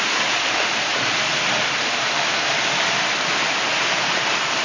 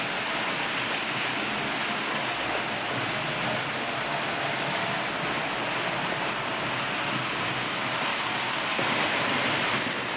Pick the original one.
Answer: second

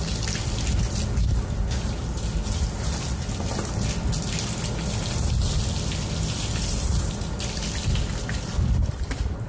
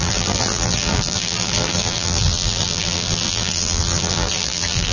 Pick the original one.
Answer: first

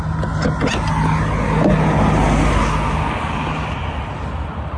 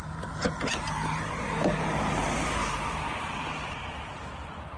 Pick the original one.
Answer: first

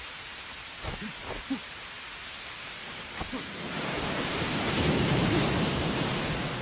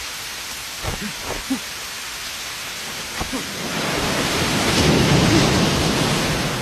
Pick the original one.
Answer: second